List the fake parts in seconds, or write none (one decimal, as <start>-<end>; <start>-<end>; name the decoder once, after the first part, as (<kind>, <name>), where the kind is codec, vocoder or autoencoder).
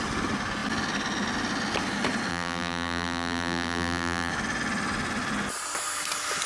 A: 2.3-4.3 (vocoder, BigVGAN v2)